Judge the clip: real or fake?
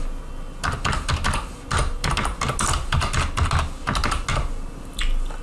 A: real